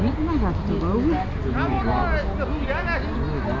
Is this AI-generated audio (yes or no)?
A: no